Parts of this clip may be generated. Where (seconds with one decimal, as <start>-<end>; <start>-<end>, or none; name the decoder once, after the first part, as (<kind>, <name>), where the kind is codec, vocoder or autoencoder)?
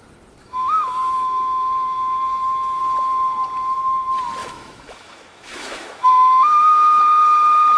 0.4-2.8 (autoencoder, DAC-VAE); 4.4-7.0